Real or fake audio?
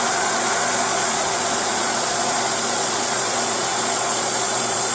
fake